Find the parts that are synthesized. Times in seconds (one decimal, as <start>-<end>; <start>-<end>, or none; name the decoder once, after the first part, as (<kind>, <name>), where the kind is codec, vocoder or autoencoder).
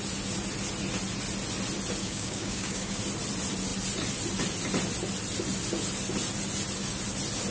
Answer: 2.0-3.0 (codec, DAC)